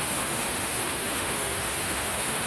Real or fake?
fake